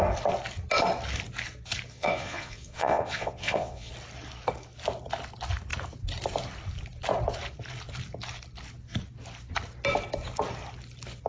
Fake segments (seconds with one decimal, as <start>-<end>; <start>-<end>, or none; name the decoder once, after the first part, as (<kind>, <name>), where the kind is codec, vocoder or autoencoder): 1.9-3.9 (vocoder, Vocos)